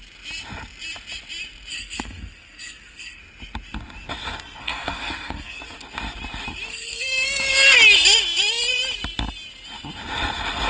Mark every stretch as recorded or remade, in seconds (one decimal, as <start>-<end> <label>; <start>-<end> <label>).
0.0-1.7 recorded; 1.7-3.2 remade; 3.2-4.6 recorded; 4.6-5.6 remade; 5.6-6.7 recorded; 6.7-7.4 remade; 7.4-10.7 recorded